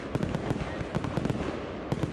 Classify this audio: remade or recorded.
recorded